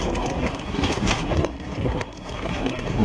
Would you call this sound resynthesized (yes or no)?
yes